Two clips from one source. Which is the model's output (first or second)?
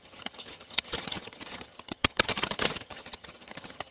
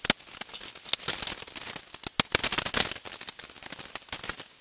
first